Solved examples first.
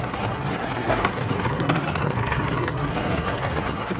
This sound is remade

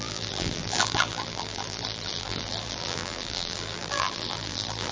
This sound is remade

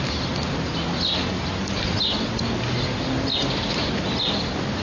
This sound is recorded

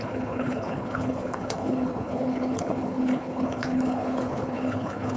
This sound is remade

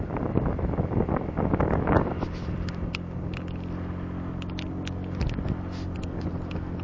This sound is recorded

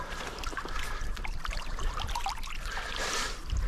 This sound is remade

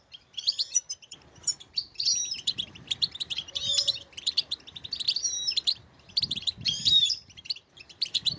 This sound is remade